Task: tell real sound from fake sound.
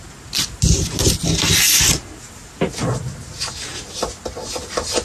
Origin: real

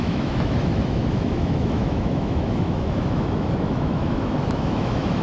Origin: fake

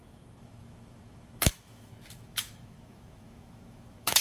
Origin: fake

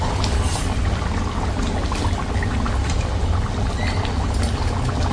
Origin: real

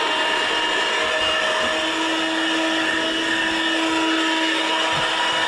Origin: real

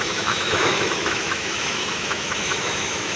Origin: fake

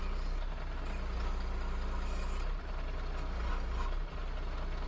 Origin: real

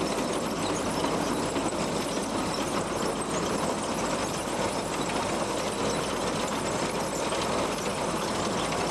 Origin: real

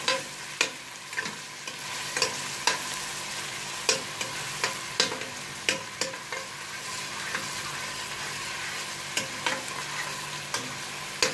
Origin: real